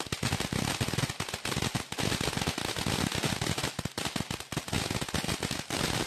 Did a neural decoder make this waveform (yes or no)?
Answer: no